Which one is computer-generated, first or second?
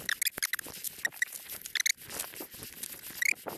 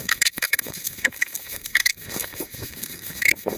second